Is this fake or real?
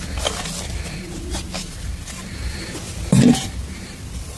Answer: real